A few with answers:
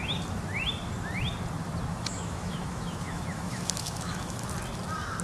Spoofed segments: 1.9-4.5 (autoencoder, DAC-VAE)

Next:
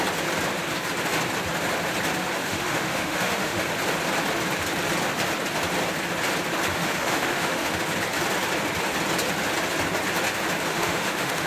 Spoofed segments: 2.4-3.6 (autoencoder, DAC-VAE); 6.7-7.8; 10.7-11.5

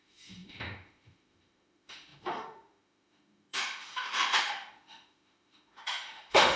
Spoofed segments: 0.0-6.6 (autoencoder, DAC-VAE)

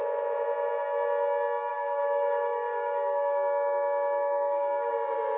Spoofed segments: 1.7-4.9 (autoencoder, DAC-VAE)